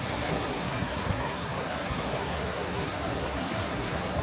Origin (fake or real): fake